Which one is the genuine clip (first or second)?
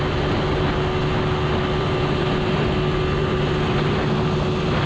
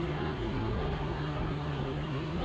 first